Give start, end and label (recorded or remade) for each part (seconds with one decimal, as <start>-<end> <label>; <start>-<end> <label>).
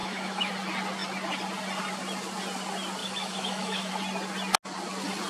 0.0-0.5 remade; 0.5-3.0 recorded; 3.0-3.9 remade; 3.9-5.3 recorded